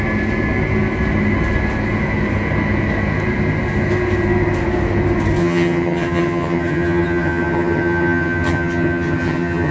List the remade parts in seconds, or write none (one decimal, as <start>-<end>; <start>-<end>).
5.4-9.7